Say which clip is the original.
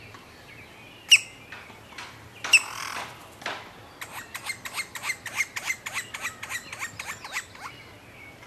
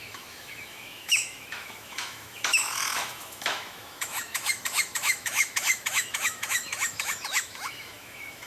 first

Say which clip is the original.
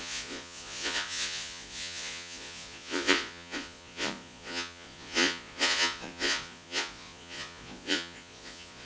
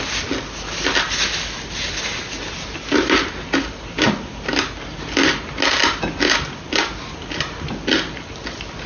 second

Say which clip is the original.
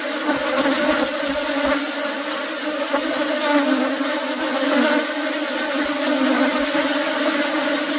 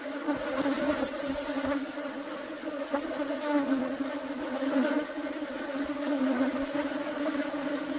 first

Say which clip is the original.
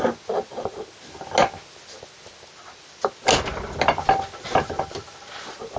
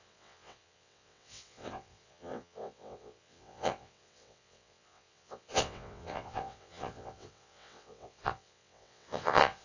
first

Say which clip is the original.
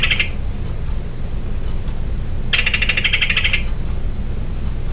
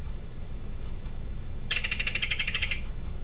first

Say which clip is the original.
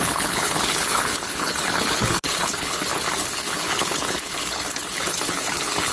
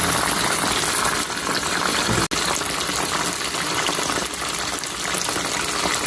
second